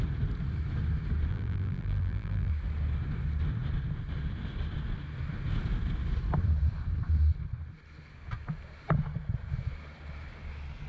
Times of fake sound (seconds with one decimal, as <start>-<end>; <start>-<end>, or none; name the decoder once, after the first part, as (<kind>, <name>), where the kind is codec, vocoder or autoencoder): 1.3-2.5 (vocoder, BigVGAN v2)